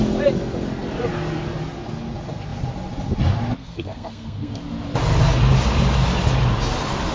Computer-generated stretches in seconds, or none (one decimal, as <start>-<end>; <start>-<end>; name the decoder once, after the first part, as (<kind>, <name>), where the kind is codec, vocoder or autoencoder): 3.6-4.6 (codec, SNAC)